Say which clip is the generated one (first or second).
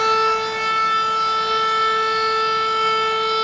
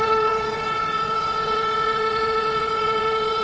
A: second